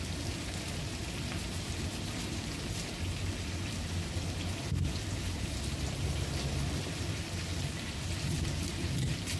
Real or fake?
real